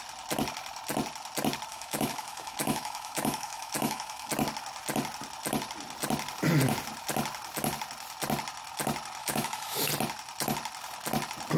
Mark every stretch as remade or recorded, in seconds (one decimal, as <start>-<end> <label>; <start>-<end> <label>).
0.0-1.7 recorded; 1.7-4.3 remade; 4.3-9.2 recorded; 9.2-9.9 remade; 9.9-11.6 recorded